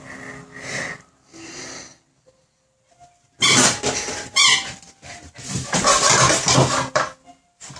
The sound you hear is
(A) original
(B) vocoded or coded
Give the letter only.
A